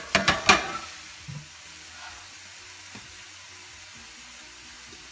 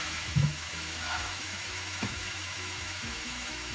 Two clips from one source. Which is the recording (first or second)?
first